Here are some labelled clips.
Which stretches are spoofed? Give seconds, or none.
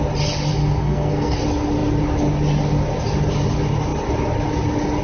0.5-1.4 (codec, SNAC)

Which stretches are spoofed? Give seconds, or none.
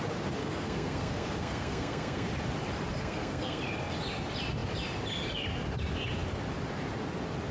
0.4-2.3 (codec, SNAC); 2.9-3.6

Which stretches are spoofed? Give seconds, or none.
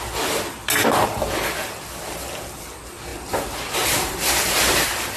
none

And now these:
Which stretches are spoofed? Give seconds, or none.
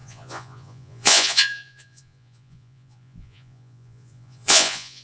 0.0-5.0 (vocoder, Vocos)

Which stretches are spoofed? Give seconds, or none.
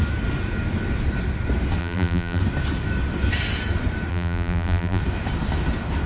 1.8-2.4 (vocoder, BigVGAN v2); 4.1-5.0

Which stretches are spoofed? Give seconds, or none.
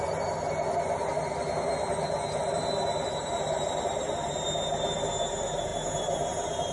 none